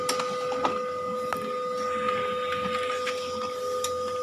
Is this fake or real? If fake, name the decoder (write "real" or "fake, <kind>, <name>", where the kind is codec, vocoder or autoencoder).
real